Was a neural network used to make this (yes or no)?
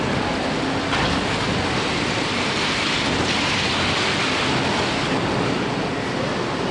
no